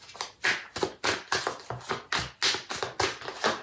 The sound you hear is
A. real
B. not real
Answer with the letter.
A